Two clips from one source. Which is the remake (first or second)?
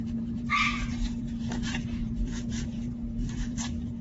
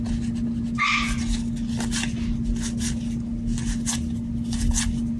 first